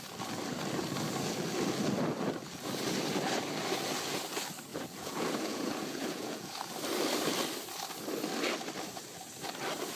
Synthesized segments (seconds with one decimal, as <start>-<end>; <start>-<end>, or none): 4.7-6.5